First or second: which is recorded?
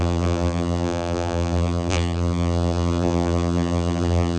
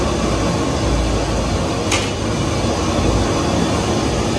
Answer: second